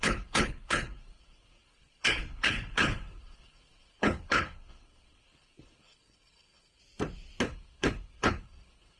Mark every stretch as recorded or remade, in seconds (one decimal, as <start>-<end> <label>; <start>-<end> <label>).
0.0-6.8 remade; 6.8-7.4 recorded; 7.4-9.0 remade